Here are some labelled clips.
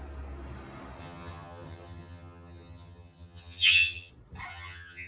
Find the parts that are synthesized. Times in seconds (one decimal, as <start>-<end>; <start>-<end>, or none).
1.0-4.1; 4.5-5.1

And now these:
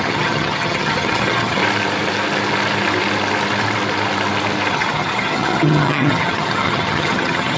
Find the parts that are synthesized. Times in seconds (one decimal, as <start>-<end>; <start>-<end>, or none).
0.0-1.6; 4.7-7.6

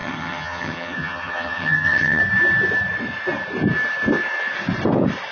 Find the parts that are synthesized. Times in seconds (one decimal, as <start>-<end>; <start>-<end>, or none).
0.0-2.2

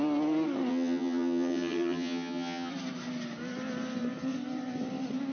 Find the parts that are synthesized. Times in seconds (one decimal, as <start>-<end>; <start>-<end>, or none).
0.7-2.7

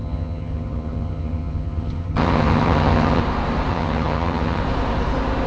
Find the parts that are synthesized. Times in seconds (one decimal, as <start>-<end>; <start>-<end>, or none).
0.0-3.2; 3.7-4.6

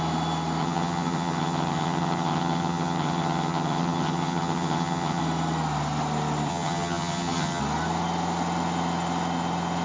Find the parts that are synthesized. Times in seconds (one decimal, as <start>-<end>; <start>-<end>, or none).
0.6-5.2; 6.5-7.6

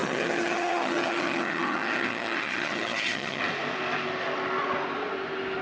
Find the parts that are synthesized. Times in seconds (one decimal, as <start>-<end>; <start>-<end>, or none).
0.0-3.4